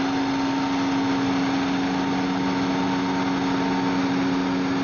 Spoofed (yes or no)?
no